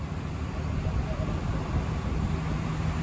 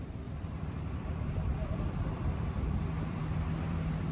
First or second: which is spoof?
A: second